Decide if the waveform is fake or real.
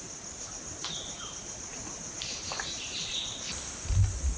real